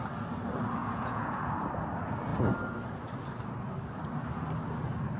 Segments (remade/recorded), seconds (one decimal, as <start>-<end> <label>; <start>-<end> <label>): 0.0-0.8 recorded; 0.8-1.5 remade; 1.5-5.2 recorded